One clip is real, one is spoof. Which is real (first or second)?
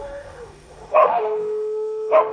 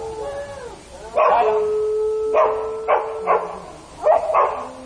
second